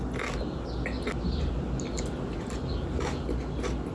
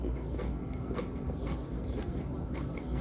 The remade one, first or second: second